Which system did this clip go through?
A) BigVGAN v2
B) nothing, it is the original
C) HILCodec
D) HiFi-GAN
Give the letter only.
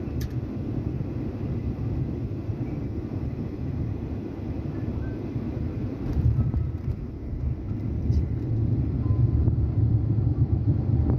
A